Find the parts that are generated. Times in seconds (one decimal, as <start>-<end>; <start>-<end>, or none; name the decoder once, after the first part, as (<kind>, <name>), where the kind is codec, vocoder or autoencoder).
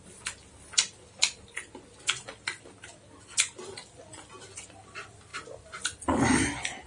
none